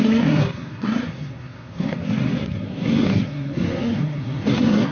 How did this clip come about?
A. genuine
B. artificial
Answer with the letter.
B